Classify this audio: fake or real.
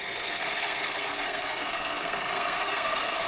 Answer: fake